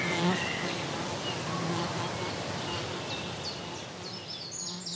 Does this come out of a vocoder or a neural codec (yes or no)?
no